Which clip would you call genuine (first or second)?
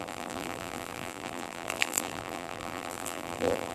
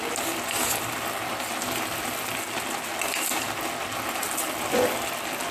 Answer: second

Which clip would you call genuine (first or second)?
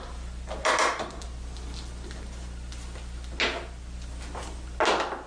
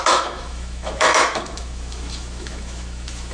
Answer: first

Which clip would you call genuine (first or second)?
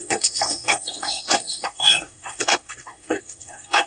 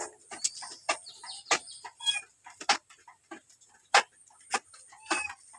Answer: second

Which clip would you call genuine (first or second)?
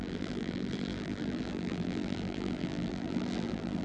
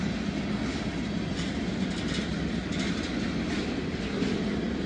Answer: second